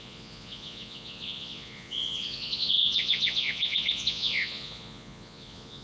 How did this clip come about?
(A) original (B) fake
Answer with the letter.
B